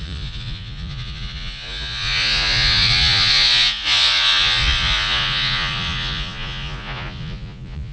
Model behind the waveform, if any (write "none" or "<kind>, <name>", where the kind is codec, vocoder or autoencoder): vocoder, Vocos